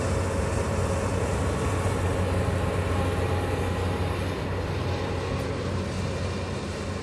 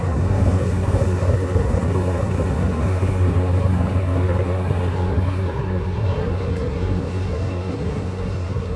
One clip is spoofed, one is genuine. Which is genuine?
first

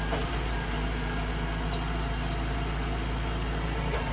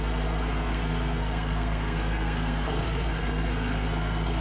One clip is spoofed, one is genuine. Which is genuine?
first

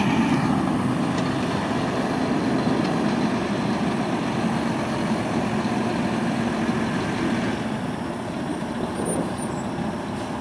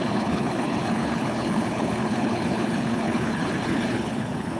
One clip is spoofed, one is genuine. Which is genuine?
first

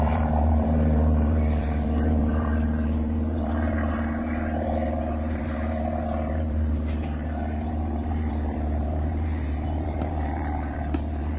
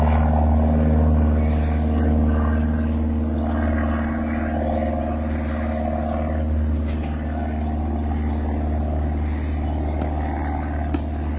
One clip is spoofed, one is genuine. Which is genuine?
second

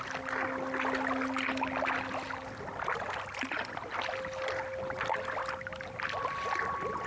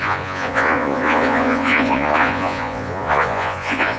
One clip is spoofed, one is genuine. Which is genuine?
first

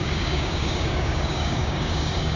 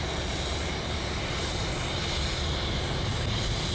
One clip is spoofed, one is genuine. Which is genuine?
second